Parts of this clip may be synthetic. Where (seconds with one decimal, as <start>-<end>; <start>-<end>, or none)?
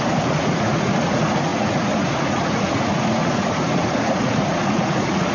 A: 0.0-5.3